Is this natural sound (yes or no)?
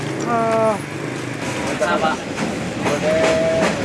yes